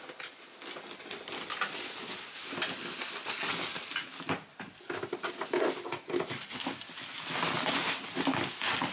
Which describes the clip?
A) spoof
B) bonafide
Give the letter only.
B